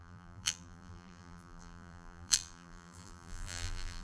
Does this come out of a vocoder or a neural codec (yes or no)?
yes